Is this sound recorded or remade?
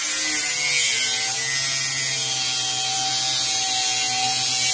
recorded